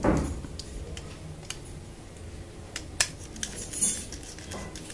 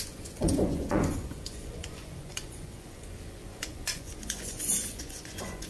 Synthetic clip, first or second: second